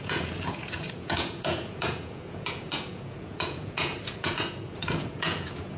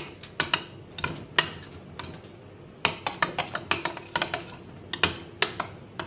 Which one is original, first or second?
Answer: second